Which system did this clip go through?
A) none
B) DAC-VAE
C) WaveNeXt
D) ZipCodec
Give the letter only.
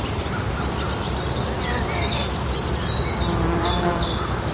A